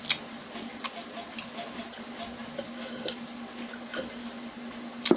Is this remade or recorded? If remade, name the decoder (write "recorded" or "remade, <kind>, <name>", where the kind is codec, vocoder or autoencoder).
recorded